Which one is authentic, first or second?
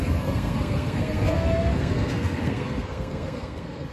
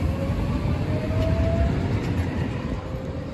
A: second